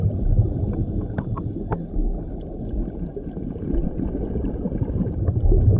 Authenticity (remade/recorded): recorded